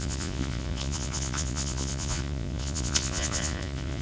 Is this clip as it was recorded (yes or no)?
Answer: no